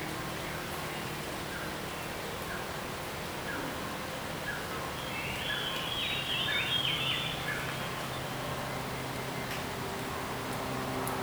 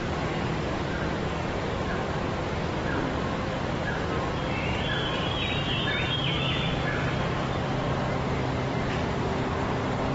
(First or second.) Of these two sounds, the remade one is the second